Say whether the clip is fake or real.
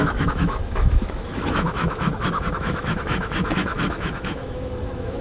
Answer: fake